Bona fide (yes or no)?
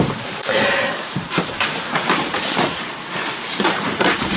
no